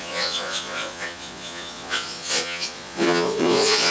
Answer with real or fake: fake